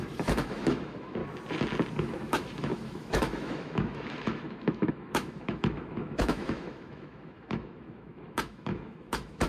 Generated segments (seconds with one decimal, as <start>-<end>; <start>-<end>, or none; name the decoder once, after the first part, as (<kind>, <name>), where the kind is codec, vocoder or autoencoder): 0.0-1.2 (autoencoder, DAC-VAE); 2.0-9.5

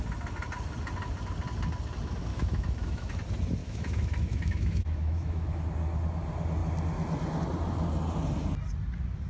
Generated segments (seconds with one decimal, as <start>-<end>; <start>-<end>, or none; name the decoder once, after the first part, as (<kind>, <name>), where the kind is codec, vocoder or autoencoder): 2.3-3.1 (autoencoder, DAC-VAE); 3.6-5.6